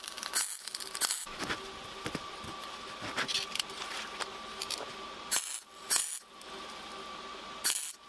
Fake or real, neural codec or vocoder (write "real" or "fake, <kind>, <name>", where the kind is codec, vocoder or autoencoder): real